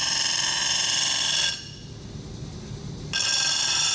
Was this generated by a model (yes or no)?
no